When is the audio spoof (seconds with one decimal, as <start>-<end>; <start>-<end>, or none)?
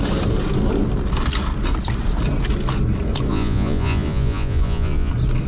3.3-5.1